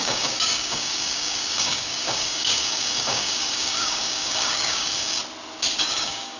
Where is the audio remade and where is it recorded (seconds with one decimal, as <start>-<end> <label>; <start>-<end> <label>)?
0.0-5.2 remade; 5.2-5.8 recorded; 5.8-6.4 remade